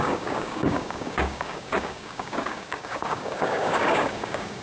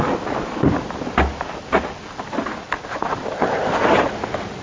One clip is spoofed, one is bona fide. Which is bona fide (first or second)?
second